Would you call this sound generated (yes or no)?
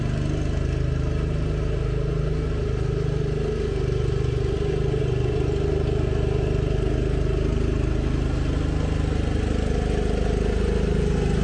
no